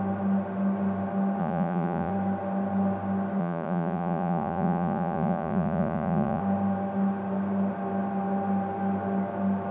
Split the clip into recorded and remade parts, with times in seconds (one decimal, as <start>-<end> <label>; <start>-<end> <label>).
0.0-1.4 recorded; 1.4-2.1 remade; 2.1-3.4 recorded; 3.4-6.4 remade; 6.4-9.7 recorded